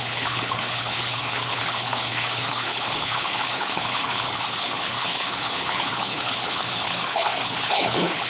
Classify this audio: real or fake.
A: fake